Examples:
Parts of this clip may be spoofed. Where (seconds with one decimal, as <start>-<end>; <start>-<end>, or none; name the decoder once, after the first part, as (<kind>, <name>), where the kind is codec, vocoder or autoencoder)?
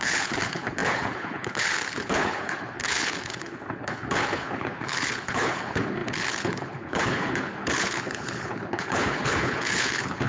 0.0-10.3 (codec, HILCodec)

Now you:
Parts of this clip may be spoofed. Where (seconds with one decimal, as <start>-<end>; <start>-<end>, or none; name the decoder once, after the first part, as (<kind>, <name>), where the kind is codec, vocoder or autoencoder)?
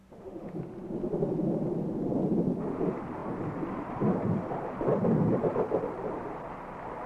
0.0-0.6 (autoencoder, DAC-VAE)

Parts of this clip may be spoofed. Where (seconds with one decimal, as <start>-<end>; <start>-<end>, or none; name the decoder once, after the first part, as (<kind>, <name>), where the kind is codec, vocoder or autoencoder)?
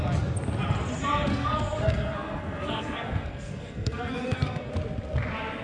1.3-4.7 (codec, SNAC)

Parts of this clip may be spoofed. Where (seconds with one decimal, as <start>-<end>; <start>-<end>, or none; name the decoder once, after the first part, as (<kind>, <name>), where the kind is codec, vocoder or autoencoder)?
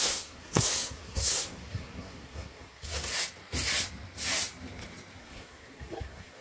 0.0-3.1 (codec, SNAC); 5.2-6.4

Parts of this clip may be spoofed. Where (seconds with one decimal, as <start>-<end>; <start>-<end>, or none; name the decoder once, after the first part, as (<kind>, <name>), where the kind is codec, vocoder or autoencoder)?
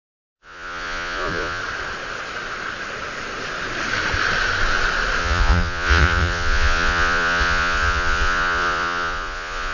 0.0-1.6 (vocoder, Vocos); 5.2-9.7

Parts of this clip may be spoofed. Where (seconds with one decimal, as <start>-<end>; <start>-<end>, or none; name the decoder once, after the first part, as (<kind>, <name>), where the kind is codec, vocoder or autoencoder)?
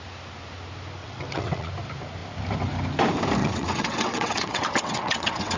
1.0-1.7 (vocoder, WaveNeXt); 3.4-5.6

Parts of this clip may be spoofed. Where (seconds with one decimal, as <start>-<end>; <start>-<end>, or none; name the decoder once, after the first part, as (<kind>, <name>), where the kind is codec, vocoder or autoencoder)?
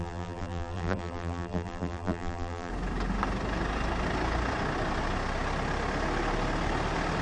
0.0-2.7 (vocoder, BigVGAN v2)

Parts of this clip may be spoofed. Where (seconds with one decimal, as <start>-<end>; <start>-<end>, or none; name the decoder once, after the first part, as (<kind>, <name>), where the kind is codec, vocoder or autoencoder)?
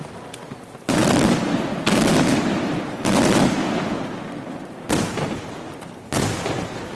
none